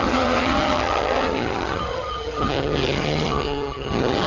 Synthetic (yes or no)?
yes